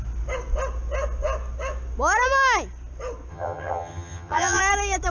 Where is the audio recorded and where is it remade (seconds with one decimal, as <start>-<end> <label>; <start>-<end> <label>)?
0.0-3.3 recorded; 3.3-4.6 remade; 4.6-5.1 recorded